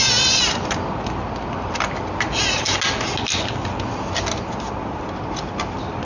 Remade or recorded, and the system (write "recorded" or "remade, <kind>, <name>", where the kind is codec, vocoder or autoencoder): recorded